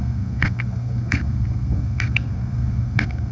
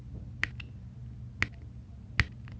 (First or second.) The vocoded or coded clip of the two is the first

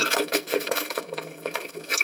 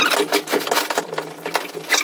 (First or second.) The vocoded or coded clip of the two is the first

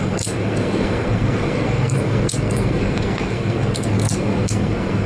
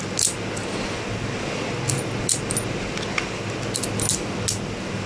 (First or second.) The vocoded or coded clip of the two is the first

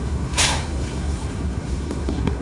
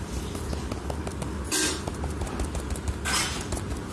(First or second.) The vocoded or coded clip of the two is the first